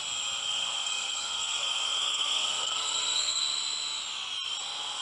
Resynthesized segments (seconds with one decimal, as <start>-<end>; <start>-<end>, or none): 0.4-3.4